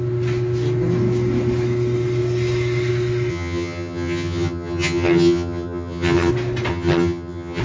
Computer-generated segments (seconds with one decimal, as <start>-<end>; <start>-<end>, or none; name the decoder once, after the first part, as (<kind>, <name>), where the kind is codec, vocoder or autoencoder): 3.3-6.3 (vocoder, HiFi-GAN); 6.7-7.6